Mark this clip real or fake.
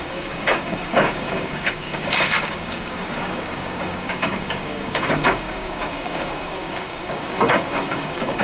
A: fake